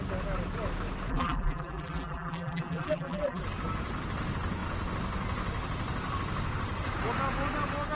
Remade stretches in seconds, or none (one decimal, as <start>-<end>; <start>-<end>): 1.1-3.4